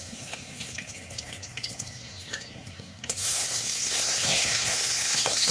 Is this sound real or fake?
fake